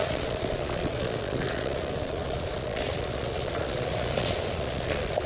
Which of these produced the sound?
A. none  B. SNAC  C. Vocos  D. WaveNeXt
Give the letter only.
C